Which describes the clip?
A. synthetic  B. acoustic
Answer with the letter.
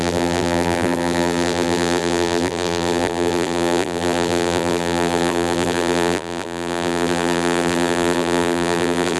A